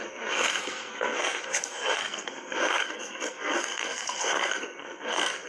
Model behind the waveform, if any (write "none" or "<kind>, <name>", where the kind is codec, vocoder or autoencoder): codec, SNAC